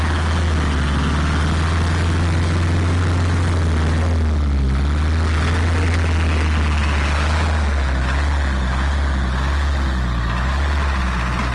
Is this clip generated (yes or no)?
no